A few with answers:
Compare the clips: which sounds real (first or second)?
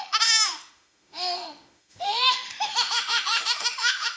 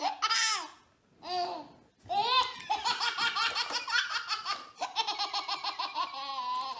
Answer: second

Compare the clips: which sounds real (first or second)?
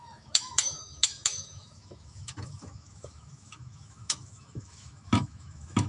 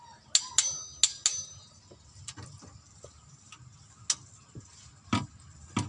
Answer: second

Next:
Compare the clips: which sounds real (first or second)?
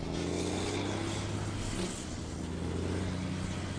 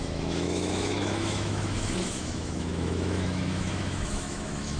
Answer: first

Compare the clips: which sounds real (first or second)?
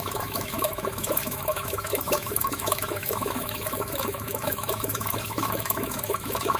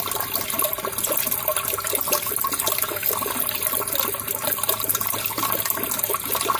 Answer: second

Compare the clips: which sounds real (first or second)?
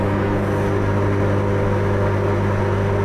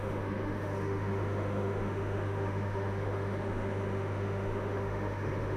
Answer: first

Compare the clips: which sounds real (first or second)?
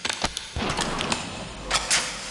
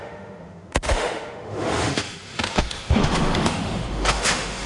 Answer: first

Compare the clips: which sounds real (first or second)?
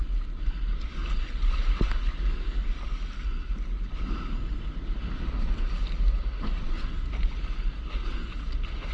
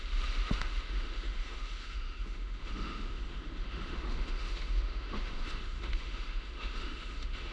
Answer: first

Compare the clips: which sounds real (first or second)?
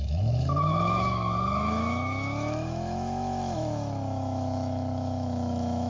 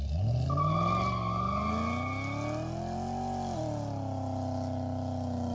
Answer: second